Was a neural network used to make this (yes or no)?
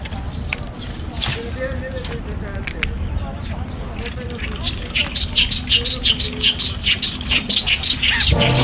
no